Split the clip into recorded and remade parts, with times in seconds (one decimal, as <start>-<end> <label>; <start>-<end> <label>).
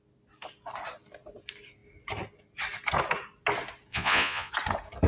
0.0-3.9 recorded; 3.9-4.5 remade; 4.5-5.1 recorded